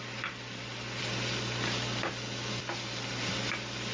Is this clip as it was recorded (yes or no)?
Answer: yes